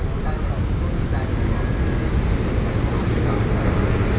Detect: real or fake real